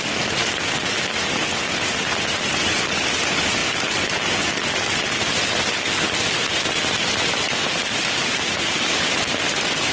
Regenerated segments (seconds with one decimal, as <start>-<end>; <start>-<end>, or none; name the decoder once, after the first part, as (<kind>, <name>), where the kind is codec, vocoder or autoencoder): none